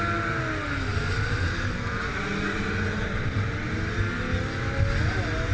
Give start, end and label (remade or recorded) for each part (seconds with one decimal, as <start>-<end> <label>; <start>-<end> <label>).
0.0-5.5 recorded